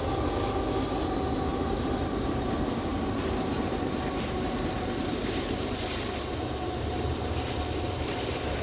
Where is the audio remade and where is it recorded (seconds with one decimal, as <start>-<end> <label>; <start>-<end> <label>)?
0.0-1.5 recorded; 1.5-2.4 remade; 2.4-2.9 recorded; 2.9-5.8 remade; 5.8-8.6 recorded